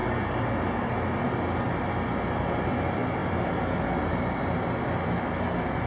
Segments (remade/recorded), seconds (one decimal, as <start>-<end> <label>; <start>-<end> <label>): 0.0-5.9 recorded